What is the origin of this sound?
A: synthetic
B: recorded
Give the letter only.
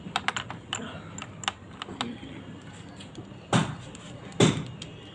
B